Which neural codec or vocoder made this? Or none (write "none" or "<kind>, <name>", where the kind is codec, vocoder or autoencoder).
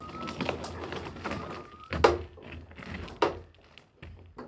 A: none